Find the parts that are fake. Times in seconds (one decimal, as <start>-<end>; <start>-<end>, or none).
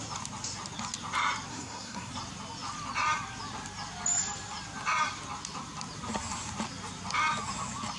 1.5-2.1